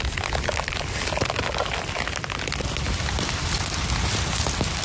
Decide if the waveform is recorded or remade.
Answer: recorded